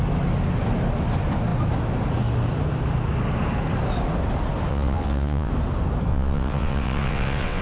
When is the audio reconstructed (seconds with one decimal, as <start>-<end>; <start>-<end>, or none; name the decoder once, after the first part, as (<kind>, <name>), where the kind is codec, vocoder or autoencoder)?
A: 4.7-5.5 (vocoder, WaveNeXt); 6.1-7.6